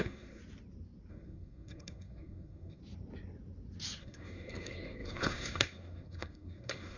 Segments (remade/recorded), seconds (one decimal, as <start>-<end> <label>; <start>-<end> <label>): 0.0-0.4 remade; 0.4-1.1 recorded; 1.1-2.8 remade; 2.8-4.0 recorded; 4.0-7.0 remade